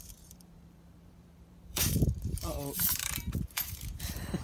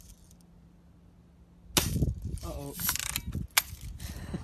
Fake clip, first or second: first